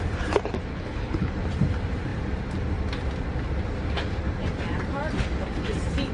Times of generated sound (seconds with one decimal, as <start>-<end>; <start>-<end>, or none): 0.7-1.3